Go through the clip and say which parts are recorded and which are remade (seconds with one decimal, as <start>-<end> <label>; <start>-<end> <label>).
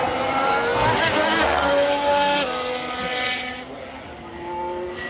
0.0-5.1 recorded